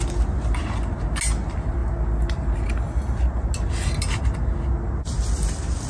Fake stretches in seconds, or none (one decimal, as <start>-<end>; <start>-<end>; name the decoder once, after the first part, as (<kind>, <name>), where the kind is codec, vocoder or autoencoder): none